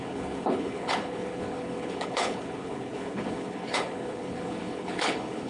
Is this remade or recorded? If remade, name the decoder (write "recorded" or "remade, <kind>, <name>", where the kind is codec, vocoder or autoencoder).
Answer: remade, codec, HILCodec